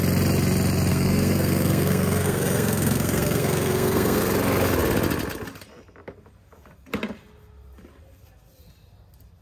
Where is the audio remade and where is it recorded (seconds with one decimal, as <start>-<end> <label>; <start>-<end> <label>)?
0.0-0.9 recorded; 0.9-4.2 remade; 4.2-9.4 recorded